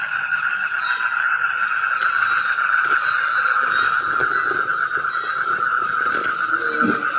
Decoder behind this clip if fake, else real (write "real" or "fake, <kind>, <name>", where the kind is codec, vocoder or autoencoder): real